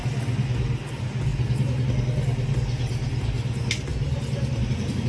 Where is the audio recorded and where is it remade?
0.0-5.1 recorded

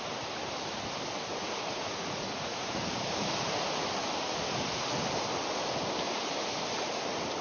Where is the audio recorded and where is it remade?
0.0-1.3 recorded; 1.3-2.8 remade; 2.8-7.4 recorded

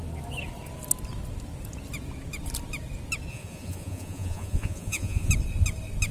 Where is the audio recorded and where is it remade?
0.0-3.3 recorded; 3.3-5.3 remade; 5.3-6.1 recorded

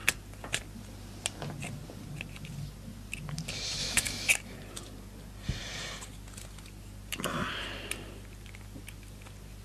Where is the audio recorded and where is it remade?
0.0-3.8 recorded; 3.8-4.3 remade; 4.3-9.6 recorded

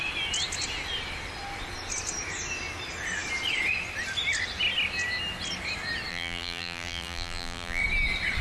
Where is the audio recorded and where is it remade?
0.0-6.1 recorded; 6.1-7.8 remade; 7.8-8.4 recorded

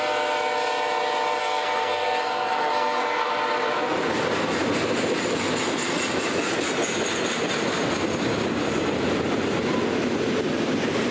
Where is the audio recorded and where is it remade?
0.0-1.4 recorded; 1.4-3.3 remade; 3.3-11.1 recorded

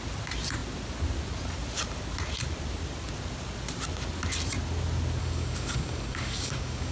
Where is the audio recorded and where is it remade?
0.0-5.2 recorded; 5.2-6.9 remade

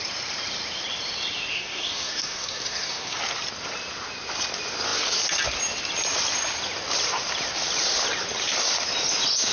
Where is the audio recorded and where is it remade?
0.0-1.5 recorded; 1.5-3.2 remade; 3.2-9.5 recorded